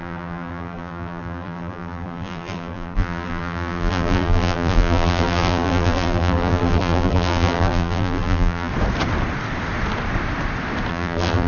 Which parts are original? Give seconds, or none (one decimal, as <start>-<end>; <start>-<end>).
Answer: 8.7-10.9